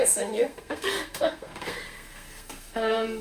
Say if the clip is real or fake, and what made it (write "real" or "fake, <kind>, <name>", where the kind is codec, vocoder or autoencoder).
fake, codec, SNAC